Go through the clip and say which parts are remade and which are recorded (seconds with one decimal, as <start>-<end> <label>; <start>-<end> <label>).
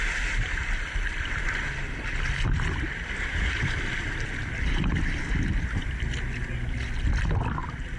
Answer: 0.0-4.4 recorded; 4.4-5.2 remade; 5.2-8.0 recorded